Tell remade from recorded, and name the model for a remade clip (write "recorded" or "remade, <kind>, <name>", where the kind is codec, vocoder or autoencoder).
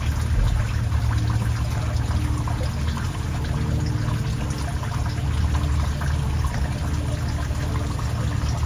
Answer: recorded